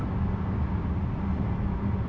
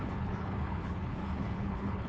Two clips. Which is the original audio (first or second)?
first